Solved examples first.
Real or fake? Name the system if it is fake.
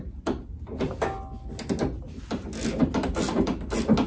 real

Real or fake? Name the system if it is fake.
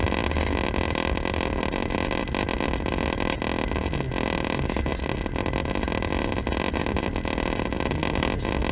real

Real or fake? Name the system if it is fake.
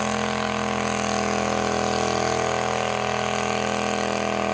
real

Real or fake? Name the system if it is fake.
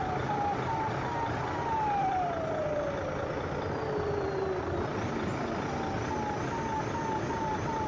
real